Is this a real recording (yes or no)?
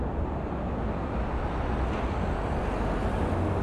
no